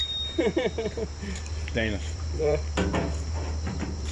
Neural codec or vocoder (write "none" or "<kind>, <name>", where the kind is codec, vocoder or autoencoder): vocoder, BigVGAN v2